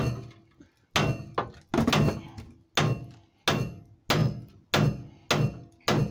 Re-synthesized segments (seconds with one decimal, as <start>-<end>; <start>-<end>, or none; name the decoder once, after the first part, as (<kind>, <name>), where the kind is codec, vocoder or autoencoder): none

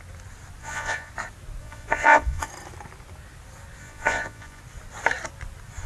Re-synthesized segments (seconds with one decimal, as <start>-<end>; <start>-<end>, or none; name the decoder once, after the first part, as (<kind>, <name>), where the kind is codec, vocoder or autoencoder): 0.6-1.1 (vocoder, Vocos); 1.6-2.5; 3.8-4.6

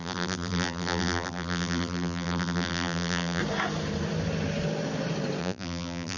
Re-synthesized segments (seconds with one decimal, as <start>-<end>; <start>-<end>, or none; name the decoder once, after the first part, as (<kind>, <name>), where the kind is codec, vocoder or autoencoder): 0.0-3.4 (vocoder, BigVGAN v2); 5.4-6.2